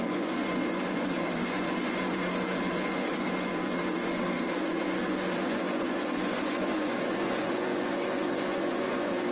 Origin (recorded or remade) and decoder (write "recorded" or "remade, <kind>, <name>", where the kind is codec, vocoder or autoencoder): remade, vocoder, Vocos